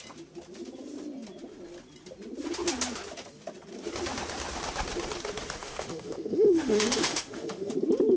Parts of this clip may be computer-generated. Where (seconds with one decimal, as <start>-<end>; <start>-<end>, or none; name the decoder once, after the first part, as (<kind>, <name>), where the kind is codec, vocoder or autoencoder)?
5.6-7.7 (autoencoder, DAC-VAE)